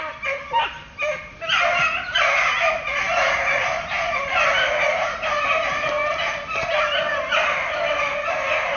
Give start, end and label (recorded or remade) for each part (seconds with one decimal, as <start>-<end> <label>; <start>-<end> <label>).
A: 0.0-8.8 recorded

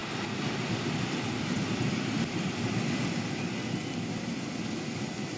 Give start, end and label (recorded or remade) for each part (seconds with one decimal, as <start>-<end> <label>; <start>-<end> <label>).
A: 0.0-3.2 remade; 3.2-5.4 recorded

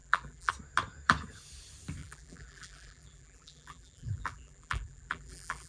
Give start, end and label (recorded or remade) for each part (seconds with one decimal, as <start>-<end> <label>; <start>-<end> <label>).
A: 0.0-0.5 remade; 0.5-2.0 recorded; 2.0-5.7 remade

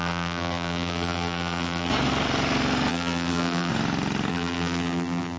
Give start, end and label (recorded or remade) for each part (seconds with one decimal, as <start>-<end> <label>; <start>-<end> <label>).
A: 0.0-1.9 remade; 1.9-2.9 recorded; 2.9-3.7 remade; 3.7-4.3 recorded; 4.3-5.4 remade

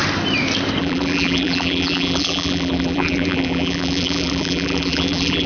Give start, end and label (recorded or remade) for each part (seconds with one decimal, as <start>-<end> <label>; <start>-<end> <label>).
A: 0.0-0.8 recorded; 0.8-5.5 remade